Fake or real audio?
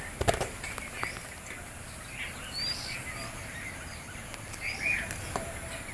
real